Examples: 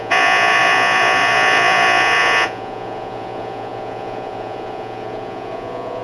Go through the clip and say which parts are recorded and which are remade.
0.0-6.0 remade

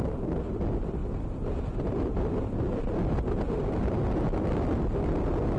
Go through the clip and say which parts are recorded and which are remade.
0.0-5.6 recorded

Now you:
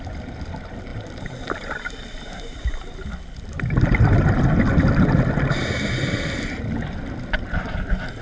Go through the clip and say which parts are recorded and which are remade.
0.0-8.2 recorded

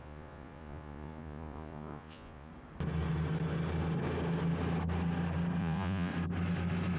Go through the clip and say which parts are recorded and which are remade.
0.0-2.5 remade; 2.5-5.6 recorded; 5.6-6.1 remade; 6.1-7.0 recorded

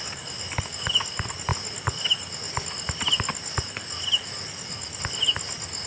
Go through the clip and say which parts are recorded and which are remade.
0.0-5.9 recorded